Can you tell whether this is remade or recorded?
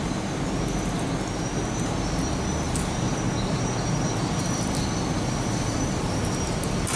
recorded